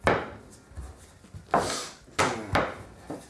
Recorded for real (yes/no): yes